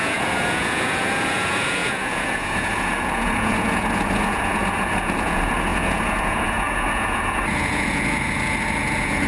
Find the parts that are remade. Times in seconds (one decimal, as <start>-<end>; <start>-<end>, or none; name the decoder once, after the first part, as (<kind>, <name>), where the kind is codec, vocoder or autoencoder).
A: 0.0-9.3 (vocoder, Vocos)